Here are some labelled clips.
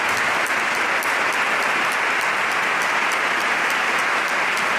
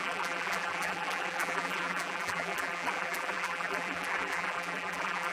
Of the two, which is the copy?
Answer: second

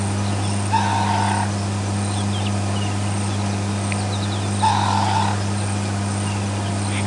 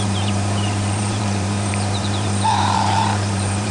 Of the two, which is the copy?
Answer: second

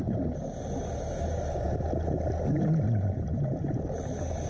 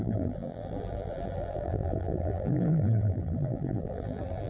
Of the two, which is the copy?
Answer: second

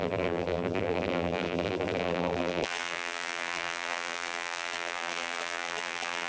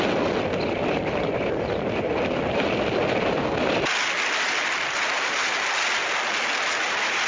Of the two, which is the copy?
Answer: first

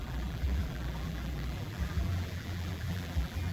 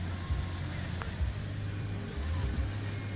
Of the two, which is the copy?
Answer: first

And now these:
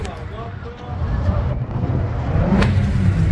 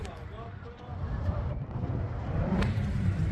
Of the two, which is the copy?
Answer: second